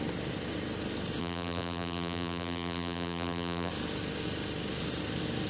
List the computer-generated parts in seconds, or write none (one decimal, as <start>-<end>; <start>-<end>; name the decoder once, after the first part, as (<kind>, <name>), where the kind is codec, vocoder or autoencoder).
1.2-3.7 (vocoder, BigVGAN v2)